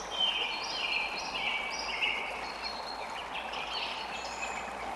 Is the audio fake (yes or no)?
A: no